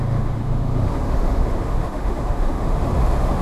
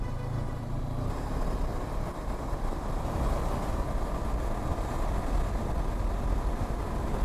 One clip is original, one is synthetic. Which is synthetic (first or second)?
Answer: first